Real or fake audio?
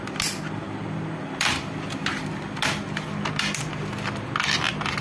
real